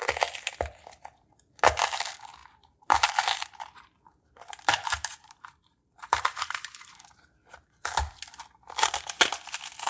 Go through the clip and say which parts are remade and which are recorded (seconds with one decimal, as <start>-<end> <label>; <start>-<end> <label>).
0.0-2.4 recorded; 2.4-3.1 remade; 3.1-5.1 recorded; 5.1-7.1 remade; 7.1-9.9 recorded